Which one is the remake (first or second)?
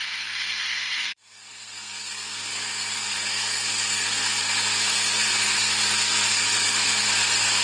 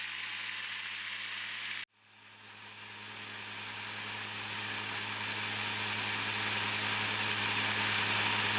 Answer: first